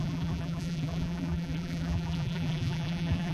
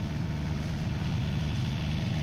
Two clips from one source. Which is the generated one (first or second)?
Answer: first